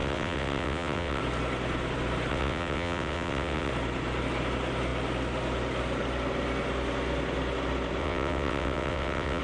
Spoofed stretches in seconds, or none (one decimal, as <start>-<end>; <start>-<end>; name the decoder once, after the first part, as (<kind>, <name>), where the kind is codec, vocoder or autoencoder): 0.0-1.2 (vocoder, WaveNeXt); 2.3-3.7; 8.0-9.4